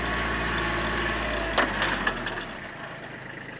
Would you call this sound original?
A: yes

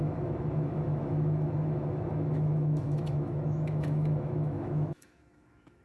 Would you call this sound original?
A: no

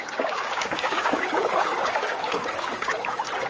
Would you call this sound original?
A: no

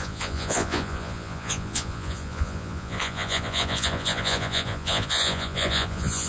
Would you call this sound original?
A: no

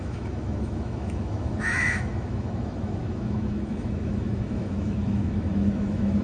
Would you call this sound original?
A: no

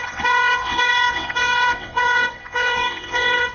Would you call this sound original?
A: no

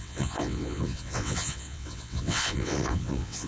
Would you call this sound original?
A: no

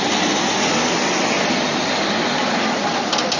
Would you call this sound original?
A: yes